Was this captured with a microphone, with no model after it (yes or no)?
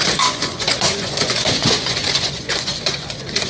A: no